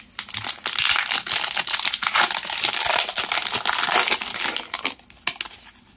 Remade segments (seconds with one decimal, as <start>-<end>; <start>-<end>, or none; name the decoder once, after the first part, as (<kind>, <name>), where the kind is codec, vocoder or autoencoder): none

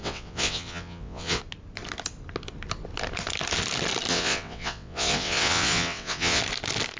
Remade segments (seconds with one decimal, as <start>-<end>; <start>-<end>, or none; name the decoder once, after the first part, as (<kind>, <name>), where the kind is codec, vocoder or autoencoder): 0.0-1.4 (vocoder, WaveNeXt); 4.1-6.4